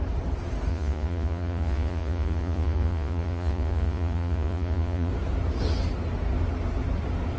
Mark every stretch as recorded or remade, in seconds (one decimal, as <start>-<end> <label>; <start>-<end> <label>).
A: 0.0-0.7 recorded; 0.7-5.1 remade; 5.1-7.4 recorded